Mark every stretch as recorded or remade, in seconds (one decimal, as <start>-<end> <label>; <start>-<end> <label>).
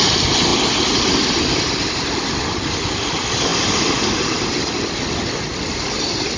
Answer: 0.0-6.4 recorded